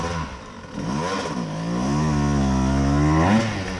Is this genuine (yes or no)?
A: yes